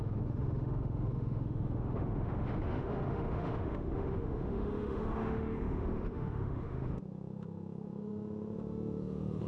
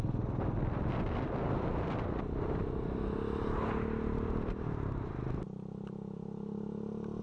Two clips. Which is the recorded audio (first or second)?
second